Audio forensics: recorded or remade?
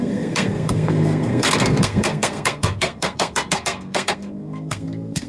remade